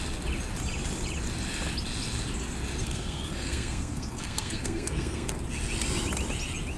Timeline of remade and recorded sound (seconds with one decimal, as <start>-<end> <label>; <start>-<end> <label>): 0.0-2.8 recorded; 2.8-5.3 remade; 5.3-6.8 recorded